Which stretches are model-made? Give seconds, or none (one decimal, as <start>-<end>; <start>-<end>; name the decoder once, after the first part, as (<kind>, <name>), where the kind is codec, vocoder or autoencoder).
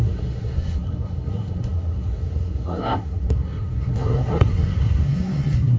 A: 0.0-5.8 (codec, SNAC)